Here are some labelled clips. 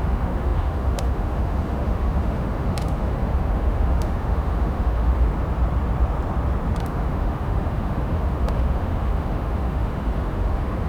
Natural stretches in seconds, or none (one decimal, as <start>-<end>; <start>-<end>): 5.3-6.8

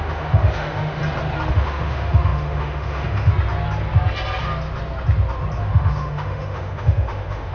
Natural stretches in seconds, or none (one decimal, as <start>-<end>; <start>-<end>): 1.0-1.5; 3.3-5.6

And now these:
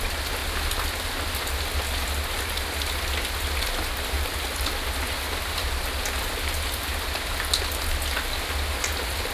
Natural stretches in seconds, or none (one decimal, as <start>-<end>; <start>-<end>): 0.0-9.3

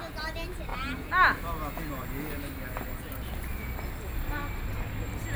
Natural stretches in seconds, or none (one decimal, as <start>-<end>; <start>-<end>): 0.0-5.4

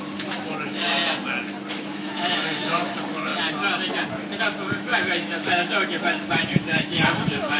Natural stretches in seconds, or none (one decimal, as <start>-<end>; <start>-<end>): 1.0-1.7; 3.3-4.4

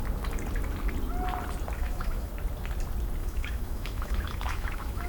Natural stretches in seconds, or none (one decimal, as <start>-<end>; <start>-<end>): 0.0-1.8; 2.3-3.2

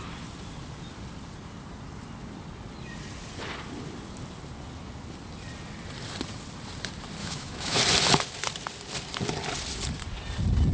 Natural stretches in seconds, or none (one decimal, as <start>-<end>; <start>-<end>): 0.0-7.2; 7.8-10.7